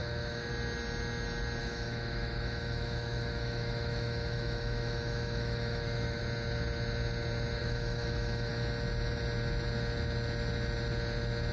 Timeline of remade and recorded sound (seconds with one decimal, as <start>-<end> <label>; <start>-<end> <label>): 0.0-0.5 remade; 0.5-1.6 recorded; 1.6-6.2 remade; 6.2-7.6 recorded; 7.6-8.5 remade; 8.5-11.5 recorded